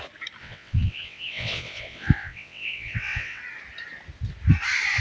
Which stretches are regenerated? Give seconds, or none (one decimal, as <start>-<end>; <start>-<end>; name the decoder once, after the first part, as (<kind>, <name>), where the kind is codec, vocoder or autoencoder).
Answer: 0.4-3.4 (vocoder, WaveNeXt)